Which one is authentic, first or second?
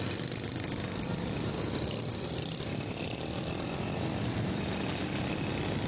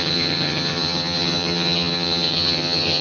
first